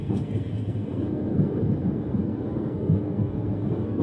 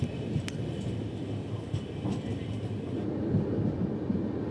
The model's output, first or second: first